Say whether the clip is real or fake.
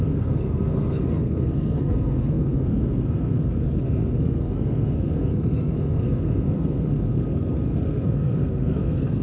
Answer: fake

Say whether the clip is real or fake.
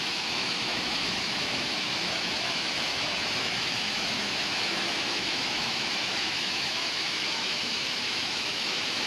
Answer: fake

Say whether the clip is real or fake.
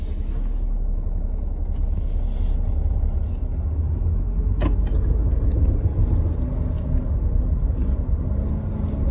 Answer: real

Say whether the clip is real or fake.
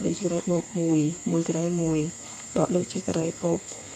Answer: fake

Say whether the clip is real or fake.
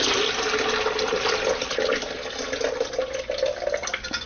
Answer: real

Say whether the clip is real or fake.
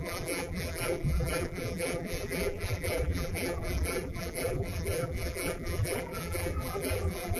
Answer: fake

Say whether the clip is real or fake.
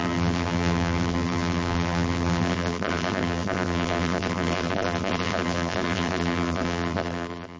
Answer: fake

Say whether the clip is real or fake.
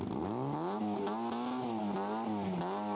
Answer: real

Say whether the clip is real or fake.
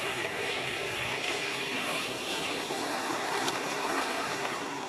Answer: fake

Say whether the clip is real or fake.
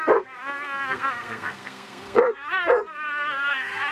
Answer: fake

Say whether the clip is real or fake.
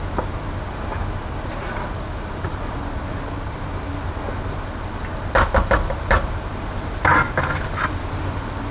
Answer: real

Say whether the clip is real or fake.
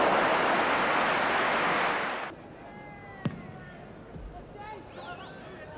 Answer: real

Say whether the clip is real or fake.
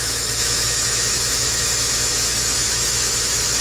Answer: fake